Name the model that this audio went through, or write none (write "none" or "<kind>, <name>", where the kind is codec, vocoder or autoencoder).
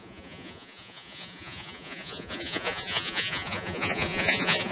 vocoder, Vocos